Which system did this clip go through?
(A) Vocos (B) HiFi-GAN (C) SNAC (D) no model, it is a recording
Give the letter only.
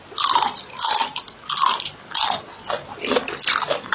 D